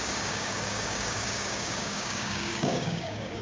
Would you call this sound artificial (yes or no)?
yes